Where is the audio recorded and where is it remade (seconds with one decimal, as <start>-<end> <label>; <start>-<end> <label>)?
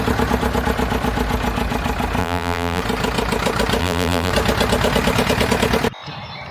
0.0-2.2 recorded; 2.2-2.8 remade; 2.8-3.8 recorded; 3.8-4.3 remade; 4.3-6.5 recorded